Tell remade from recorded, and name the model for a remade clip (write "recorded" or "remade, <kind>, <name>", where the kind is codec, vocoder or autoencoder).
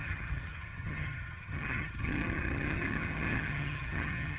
remade, vocoder, HiFi-GAN